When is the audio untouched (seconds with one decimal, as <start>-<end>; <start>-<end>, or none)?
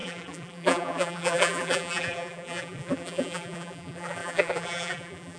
none